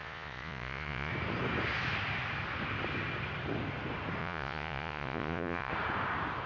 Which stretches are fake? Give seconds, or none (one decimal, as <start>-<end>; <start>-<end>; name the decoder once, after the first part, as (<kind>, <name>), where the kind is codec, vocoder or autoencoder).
0.0-1.1 (vocoder, Vocos); 4.2-5.7